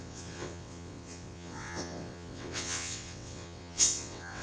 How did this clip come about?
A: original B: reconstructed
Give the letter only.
B